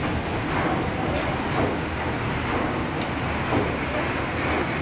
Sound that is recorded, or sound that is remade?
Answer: recorded